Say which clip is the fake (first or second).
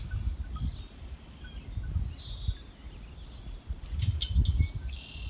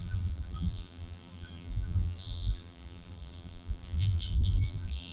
second